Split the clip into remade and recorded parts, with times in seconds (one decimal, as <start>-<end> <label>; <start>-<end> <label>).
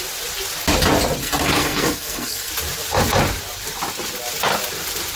0.0-1.2 recorded; 1.2-2.5 remade; 2.5-5.2 recorded